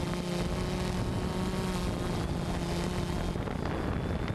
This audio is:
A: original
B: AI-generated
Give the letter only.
A